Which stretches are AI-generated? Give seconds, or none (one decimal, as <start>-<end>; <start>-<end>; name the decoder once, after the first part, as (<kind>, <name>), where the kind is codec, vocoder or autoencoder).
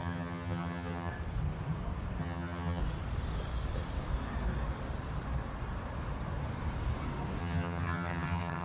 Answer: 0.0-1.1 (vocoder, HiFi-GAN); 2.2-2.8; 7.4-8.6